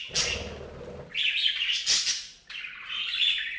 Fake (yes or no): no